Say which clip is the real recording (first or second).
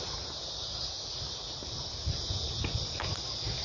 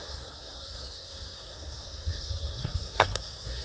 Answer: first